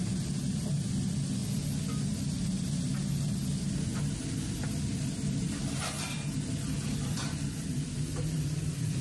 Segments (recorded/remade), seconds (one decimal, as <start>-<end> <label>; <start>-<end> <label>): 0.0-3.9 recorded; 3.9-9.0 remade

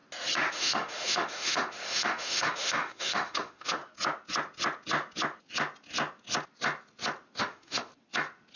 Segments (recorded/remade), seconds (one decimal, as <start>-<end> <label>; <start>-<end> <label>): 0.0-0.5 recorded; 0.5-3.8 remade; 3.8-7.4 recorded; 7.4-7.9 remade; 7.9-8.6 recorded

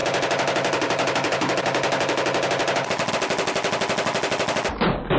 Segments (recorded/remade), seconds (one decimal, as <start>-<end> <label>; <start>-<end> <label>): 0.0-5.2 recorded

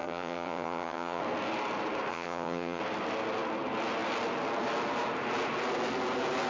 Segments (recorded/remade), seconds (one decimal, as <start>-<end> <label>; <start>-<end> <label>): 0.0-1.2 remade; 1.2-2.1 recorded; 2.1-2.8 remade; 2.8-6.5 recorded

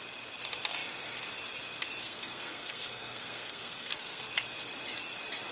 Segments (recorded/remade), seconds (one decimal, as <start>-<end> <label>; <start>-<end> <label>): 0.0-2.0 recorded; 2.0-4.2 remade; 4.2-5.5 recorded

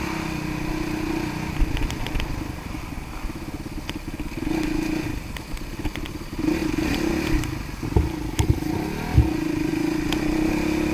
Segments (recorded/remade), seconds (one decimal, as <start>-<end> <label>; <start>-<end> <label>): 0.0-10.9 recorded

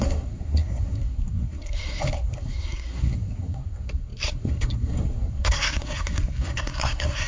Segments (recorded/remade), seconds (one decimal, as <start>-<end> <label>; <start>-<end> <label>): 0.0-7.3 remade

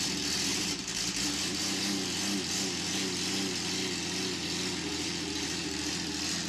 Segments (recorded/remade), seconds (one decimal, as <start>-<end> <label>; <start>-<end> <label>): 0.0-0.5 recorded; 0.5-1.1 remade; 1.1-4.9 recorded; 4.9-5.9 remade; 5.9-6.5 recorded